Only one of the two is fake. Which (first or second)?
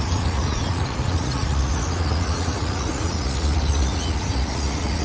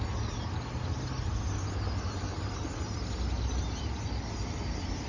first